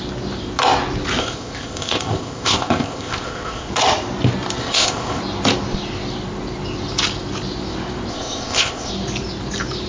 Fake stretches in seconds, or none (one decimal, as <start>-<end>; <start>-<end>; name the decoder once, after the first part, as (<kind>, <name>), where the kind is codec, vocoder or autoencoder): 1.2-3.7 (codec, ZipCodec); 4.6-5.2; 8.1-8.9